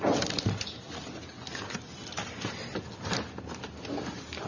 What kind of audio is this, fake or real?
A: real